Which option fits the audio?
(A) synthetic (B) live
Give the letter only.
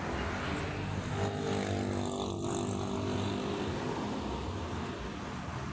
B